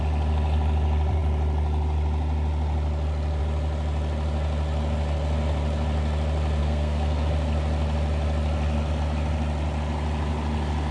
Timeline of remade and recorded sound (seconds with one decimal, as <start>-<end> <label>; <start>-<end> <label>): 0.0-6.6 recorded; 6.6-7.3 remade; 7.3-10.9 recorded